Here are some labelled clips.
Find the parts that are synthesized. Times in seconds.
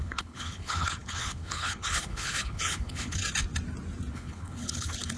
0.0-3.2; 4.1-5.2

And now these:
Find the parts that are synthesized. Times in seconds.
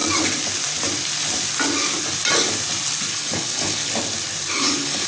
3.1-3.9; 4.5-5.1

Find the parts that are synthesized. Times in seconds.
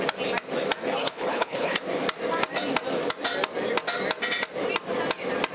1.0-1.8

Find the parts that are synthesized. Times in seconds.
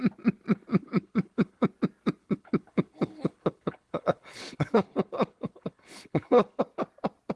0.7-1.7; 2.2-6.6